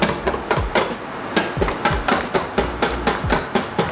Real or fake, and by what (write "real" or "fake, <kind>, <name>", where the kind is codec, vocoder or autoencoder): real